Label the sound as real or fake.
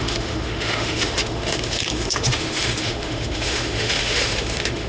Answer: fake